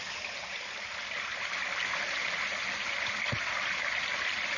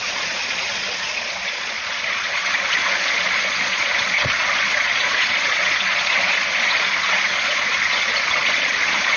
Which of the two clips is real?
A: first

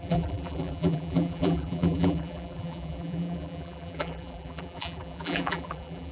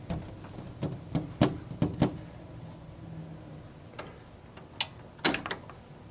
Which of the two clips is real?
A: second